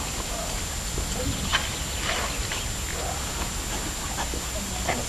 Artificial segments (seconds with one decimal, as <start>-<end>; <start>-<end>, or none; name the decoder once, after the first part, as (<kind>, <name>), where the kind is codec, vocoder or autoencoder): none